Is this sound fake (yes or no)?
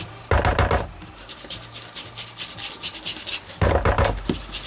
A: no